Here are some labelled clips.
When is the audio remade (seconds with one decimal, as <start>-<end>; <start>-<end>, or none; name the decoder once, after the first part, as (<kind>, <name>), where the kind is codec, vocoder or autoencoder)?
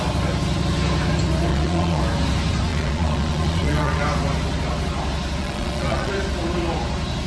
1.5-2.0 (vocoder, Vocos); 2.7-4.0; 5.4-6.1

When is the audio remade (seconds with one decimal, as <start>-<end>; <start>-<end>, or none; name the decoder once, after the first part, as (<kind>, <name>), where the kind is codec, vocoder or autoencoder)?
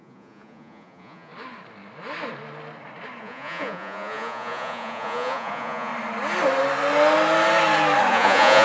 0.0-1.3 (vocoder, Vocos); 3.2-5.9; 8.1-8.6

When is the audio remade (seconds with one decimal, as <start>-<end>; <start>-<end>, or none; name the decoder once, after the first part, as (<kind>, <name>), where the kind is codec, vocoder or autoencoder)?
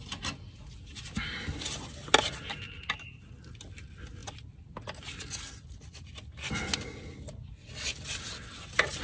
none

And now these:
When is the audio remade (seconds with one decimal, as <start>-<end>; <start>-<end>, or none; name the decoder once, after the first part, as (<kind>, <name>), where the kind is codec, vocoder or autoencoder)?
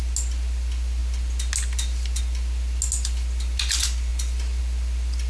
none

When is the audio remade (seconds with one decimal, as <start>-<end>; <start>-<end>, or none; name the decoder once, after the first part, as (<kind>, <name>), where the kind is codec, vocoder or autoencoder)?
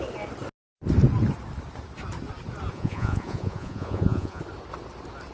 2.7-4.4 (vocoder, Vocos)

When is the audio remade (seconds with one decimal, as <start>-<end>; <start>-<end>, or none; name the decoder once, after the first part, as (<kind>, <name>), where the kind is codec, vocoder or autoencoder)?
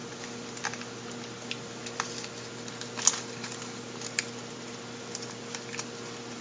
none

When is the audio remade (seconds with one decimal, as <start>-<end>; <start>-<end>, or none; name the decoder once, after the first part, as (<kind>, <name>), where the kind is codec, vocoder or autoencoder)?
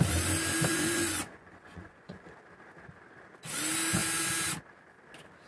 0.7-2.3 (vocoder, Vocos)